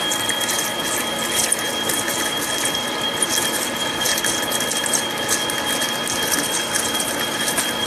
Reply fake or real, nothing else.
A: real